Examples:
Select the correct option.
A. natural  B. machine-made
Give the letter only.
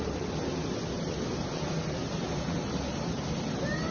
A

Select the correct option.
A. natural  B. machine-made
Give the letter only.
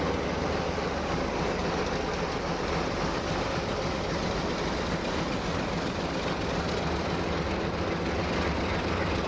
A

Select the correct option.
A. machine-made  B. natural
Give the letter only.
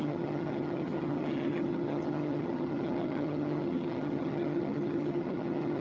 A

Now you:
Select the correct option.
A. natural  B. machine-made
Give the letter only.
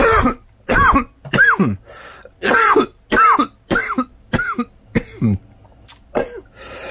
A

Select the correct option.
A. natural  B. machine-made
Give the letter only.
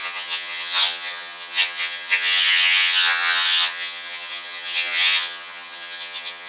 B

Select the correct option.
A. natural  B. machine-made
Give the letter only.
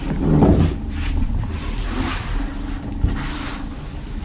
A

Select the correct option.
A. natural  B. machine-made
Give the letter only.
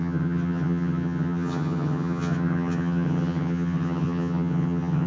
B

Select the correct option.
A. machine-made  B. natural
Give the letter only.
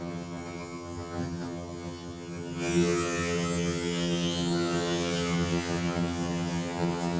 A